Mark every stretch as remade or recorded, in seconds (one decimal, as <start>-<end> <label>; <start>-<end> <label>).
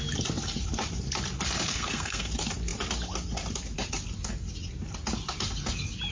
0.0-1.7 recorded; 1.7-2.3 remade; 2.3-6.1 recorded